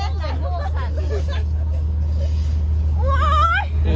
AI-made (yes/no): no